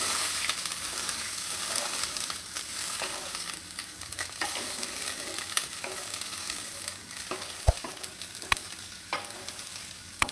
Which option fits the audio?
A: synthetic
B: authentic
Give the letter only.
A